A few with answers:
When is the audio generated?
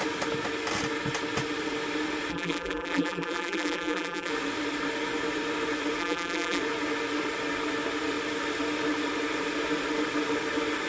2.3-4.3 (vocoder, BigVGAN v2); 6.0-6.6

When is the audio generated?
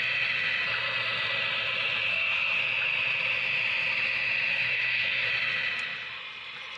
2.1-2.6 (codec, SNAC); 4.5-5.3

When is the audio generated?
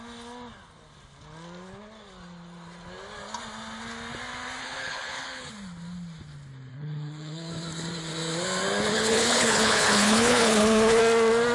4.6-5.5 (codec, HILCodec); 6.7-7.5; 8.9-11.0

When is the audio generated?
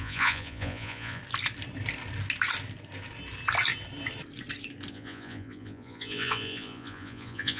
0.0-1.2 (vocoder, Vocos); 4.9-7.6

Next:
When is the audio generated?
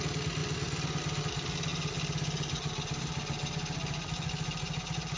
none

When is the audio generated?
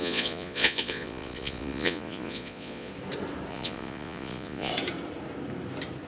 0.0-2.9 (vocoder, Vocos); 3.5-4.7